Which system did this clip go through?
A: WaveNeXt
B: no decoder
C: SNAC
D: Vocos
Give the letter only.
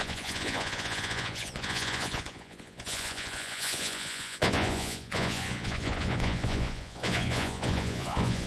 D